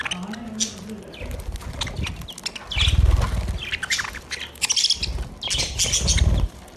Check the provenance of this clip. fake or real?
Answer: real